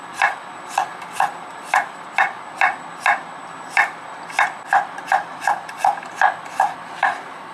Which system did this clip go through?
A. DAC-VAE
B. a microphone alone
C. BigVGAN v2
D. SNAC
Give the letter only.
C